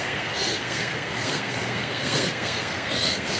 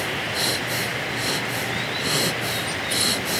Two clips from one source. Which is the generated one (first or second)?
first